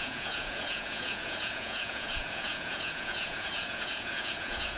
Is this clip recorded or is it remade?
remade